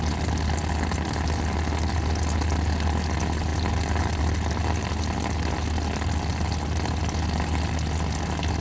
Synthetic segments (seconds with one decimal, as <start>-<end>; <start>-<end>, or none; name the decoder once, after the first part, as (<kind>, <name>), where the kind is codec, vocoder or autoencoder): none